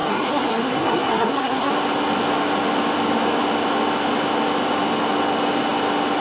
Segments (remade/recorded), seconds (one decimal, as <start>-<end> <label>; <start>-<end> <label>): 0.0-1.7 remade; 1.7-6.2 recorded